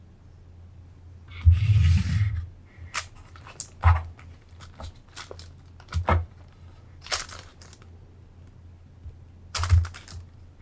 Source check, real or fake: real